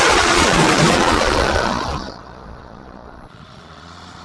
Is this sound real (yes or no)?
no